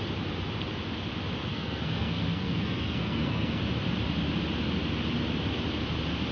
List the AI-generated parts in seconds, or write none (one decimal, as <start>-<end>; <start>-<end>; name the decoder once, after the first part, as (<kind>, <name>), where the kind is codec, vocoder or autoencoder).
1.5-3.6 (codec, SNAC)